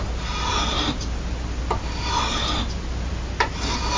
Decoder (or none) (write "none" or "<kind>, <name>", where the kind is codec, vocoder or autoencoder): none